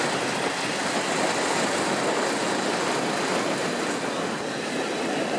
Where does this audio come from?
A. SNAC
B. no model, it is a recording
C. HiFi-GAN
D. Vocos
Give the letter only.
B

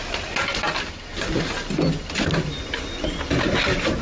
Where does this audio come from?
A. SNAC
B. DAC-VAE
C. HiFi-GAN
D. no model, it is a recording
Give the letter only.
D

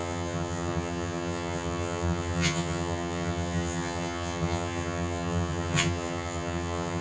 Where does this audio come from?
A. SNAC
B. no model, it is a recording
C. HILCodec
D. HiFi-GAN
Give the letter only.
D